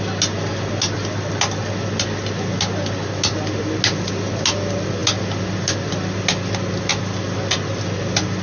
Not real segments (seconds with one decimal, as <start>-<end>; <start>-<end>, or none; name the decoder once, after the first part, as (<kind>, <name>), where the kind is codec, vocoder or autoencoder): none